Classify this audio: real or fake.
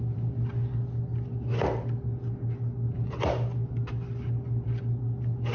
real